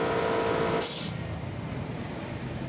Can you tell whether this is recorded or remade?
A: recorded